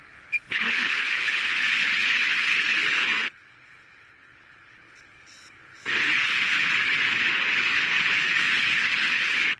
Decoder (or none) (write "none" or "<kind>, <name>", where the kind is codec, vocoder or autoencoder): codec, HILCodec